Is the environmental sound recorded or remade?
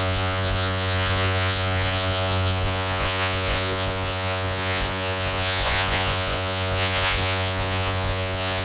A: remade